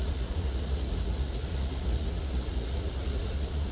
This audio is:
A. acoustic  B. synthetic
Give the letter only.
B